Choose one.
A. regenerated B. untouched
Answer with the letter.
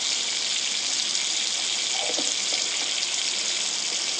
B